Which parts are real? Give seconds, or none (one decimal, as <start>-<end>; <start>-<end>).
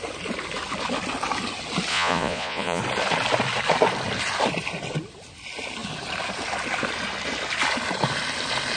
0.0-1.9; 2.8-8.8